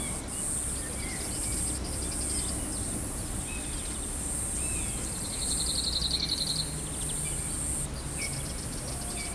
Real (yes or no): yes